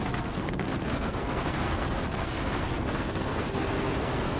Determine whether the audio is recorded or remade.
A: remade